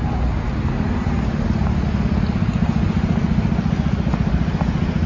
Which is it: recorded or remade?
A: recorded